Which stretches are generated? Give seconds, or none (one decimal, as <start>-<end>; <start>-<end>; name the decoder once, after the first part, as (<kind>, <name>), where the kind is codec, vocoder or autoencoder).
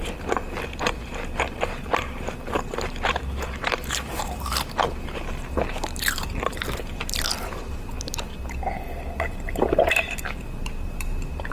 0.0-8.3 (vocoder, BigVGAN v2); 9.1-11.5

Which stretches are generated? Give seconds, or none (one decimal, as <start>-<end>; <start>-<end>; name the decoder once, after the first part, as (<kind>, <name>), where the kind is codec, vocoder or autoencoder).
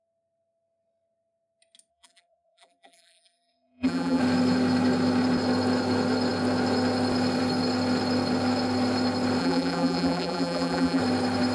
1.9-4.2 (vocoder, BigVGAN v2); 9.4-11.0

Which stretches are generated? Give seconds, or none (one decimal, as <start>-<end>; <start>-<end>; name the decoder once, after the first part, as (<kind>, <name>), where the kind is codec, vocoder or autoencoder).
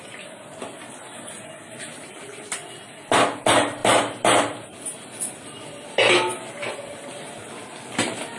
none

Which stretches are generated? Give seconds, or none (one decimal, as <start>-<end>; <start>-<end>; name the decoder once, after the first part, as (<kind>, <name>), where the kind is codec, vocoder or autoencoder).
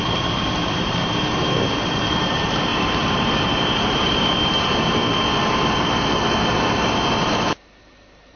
0.0-5.0 (vocoder, BigVGAN v2); 7.2-8.4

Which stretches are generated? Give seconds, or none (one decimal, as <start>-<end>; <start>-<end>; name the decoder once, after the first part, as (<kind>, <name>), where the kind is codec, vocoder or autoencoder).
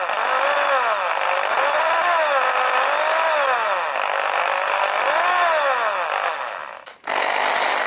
6.6-7.2 (vocoder, BigVGAN v2)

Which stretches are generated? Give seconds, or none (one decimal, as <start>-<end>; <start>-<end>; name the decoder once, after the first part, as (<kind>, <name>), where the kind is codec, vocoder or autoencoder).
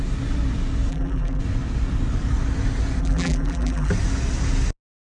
0.9-1.4 (vocoder, BigVGAN v2); 3.0-3.9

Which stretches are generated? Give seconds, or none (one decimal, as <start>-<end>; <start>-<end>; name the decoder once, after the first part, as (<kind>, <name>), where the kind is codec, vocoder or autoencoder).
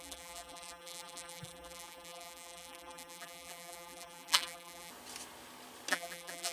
0.0-4.9 (vocoder, BigVGAN v2); 5.9-6.5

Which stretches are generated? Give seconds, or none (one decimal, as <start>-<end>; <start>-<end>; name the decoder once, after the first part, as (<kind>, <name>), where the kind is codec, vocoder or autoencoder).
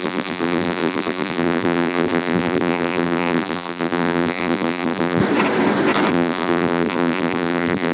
0.0-5.2 (vocoder, BigVGAN v2); 6.1-7.9